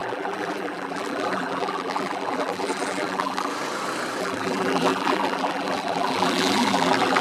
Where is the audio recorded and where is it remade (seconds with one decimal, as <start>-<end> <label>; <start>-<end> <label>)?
0.0-3.5 remade; 3.5-4.2 recorded; 4.2-7.2 remade